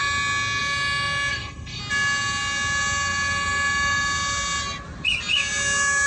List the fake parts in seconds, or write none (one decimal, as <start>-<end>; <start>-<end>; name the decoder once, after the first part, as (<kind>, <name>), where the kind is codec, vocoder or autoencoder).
1.3-1.8 (codec, DAC)